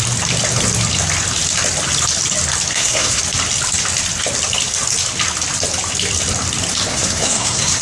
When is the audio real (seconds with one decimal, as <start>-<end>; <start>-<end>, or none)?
0.0-2.7; 3.2-6.9